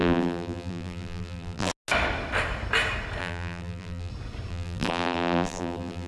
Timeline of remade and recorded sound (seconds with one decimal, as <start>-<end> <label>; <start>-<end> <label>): 0.0-1.7 remade; 1.7-3.2 recorded; 3.2-4.1 remade; 4.1-4.5 recorded; 4.5-6.1 remade